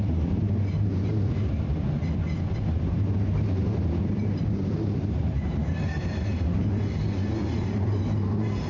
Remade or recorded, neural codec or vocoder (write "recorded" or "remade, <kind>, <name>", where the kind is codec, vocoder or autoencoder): recorded